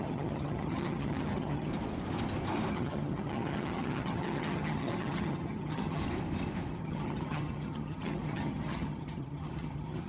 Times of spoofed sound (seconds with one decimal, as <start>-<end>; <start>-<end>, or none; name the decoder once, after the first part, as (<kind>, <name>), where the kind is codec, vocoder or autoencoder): 0.0-1.7 (vocoder, HiFi-GAN); 2.7-6.0; 6.7-10.1